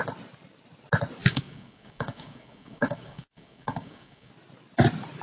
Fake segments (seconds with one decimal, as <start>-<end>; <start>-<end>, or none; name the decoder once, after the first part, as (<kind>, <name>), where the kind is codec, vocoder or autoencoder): 1.2-4.3 (codec, DAC)